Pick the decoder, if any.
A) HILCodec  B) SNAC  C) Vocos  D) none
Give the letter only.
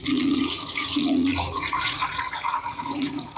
C